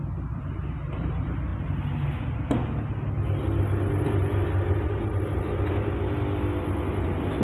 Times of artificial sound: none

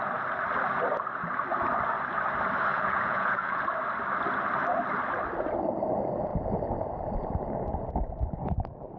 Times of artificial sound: 2.7-3.6

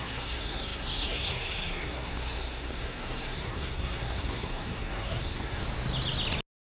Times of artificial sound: 0.0-5.6

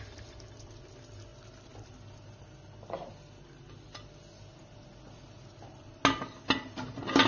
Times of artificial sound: none

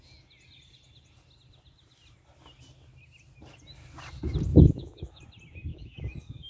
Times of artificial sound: 4.5-5.2; 5.7-6.5

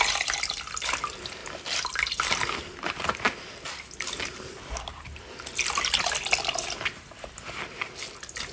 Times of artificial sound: none

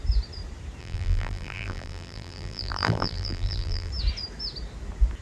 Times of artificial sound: 0.8-3.9